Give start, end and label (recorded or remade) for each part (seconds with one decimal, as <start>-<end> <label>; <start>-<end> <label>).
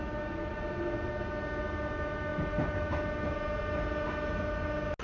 0.0-0.5 recorded; 0.5-1.1 remade; 1.1-5.0 recorded